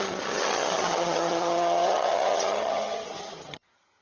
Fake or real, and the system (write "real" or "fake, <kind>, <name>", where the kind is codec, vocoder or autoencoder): fake, vocoder, HiFi-GAN